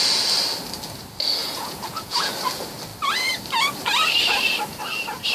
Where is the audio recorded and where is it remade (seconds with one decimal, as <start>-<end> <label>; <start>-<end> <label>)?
0.0-1.4 recorded; 1.4-2.3 remade; 2.3-5.3 recorded